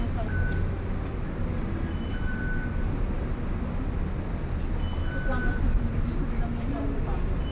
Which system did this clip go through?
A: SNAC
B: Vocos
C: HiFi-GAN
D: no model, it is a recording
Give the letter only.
D